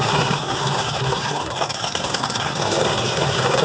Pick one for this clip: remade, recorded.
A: remade